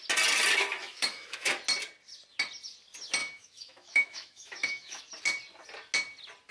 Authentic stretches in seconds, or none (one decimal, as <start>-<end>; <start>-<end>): 0.0-0.8; 1.5-3.2; 5.0-6.5